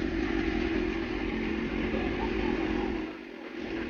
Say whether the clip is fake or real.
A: real